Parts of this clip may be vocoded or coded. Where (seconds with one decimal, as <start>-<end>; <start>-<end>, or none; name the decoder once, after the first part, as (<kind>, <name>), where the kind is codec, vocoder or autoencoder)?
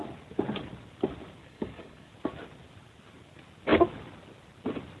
1.4-2.1 (codec, DAC)